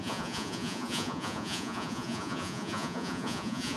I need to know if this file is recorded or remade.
remade